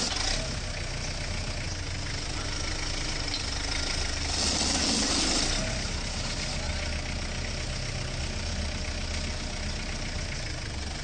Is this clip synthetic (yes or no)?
no